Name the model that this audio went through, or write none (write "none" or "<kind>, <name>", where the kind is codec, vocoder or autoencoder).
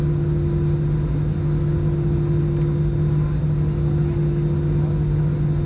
none